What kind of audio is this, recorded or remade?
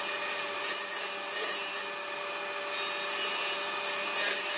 recorded